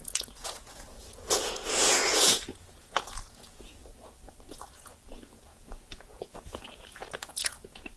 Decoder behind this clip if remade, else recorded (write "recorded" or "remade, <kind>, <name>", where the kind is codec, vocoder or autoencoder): remade, vocoder, Vocos